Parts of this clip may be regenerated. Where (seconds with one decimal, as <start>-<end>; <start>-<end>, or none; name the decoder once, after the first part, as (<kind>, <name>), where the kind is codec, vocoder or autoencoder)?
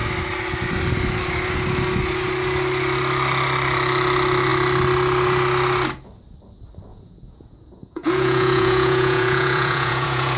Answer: 6.9-10.4 (vocoder, Vocos)